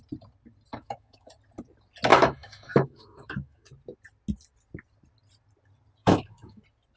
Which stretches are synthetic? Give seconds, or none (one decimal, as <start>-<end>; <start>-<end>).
0.7-1.3; 2.1-3.7; 6.0-6.6